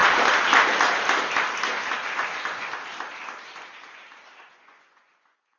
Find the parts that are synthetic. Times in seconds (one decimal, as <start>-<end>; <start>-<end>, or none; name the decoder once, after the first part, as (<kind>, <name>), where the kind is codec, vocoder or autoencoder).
2.2-2.7 (vocoder, Vocos); 4.4-5.6